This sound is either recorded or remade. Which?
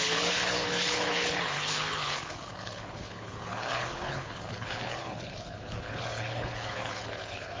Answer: remade